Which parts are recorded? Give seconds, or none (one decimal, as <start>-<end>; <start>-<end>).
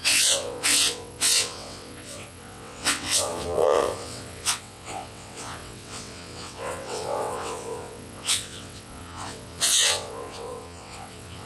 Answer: none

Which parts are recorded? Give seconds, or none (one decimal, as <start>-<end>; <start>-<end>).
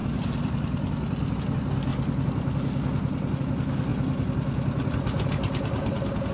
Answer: 0.0-6.3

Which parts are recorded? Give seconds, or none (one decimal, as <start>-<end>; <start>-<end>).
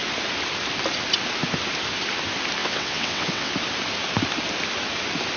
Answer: 0.0-2.6; 3.5-5.4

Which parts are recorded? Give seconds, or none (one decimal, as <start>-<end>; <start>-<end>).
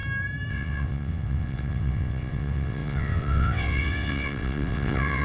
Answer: 0.0-0.5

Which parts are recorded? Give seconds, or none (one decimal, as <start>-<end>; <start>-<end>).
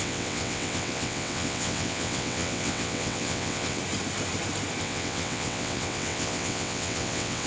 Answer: 3.8-4.8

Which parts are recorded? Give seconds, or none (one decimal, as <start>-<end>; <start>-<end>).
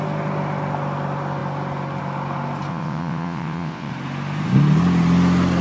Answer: 0.0-2.7; 3.9-5.6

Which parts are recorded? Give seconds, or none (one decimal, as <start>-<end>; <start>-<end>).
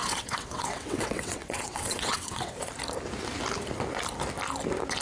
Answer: 2.7-5.0